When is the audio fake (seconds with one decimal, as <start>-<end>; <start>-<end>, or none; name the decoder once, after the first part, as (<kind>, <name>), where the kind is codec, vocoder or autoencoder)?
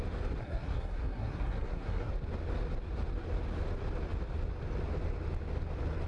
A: 0.4-2.1 (codec, SNAC)